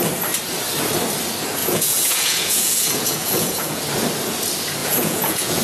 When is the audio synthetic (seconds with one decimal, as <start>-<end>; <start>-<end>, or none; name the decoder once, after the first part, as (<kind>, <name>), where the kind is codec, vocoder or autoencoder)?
1.6-3.8 (vocoder, Vocos); 4.8-5.6